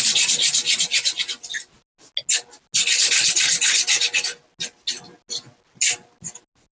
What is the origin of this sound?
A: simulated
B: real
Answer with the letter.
B